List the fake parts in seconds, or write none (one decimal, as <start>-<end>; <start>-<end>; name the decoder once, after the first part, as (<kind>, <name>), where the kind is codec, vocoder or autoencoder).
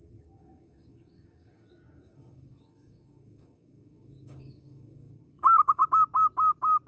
0.0-5.8 (codec, DAC)